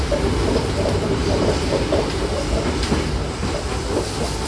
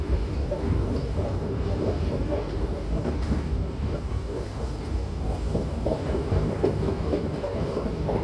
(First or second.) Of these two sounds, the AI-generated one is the second